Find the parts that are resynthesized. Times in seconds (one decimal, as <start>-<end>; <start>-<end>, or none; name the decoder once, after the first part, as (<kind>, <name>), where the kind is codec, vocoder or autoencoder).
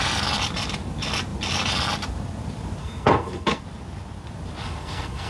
2.8-3.6 (codec, SNAC); 4.6-5.3